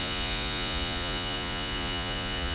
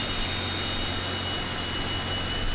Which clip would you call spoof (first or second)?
first